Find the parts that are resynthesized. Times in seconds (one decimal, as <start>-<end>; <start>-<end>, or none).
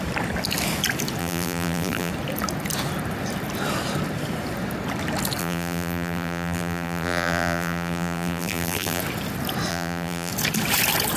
1.2-2.1; 5.4-9.0; 9.7-10.3